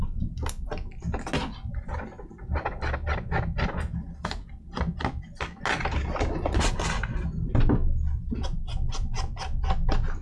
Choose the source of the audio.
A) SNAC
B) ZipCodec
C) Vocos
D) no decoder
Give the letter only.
D